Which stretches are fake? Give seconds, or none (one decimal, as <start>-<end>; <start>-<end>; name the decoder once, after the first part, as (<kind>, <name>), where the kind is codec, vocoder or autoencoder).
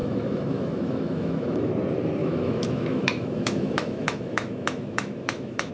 0.0-1.7 (autoencoder, DAC-VAE); 2.2-5.7